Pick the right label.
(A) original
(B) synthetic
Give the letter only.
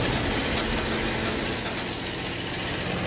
A